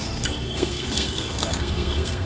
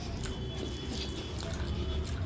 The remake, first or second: first